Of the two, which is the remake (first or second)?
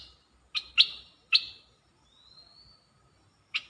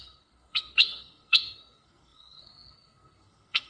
second